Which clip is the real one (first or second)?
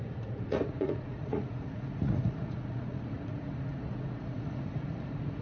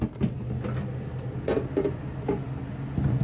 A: second